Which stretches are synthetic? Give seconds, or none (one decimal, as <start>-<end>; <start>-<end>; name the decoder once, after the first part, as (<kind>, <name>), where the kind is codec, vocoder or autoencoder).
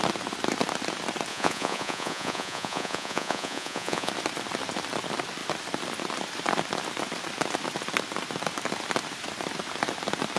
1.3-4.1 (vocoder, Vocos)